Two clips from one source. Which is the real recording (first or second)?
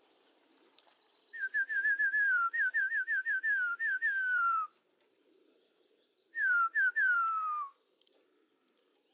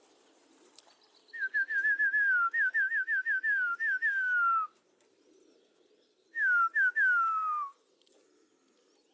second